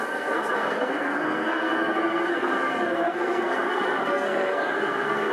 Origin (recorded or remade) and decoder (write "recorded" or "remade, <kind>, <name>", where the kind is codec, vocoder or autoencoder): remade, codec, SNAC